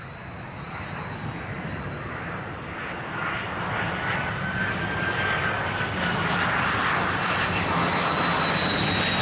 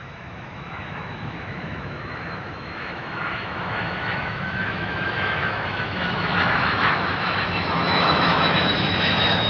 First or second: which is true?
first